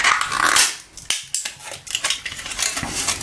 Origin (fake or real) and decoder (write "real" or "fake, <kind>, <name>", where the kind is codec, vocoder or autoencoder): real